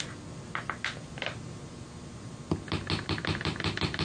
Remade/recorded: recorded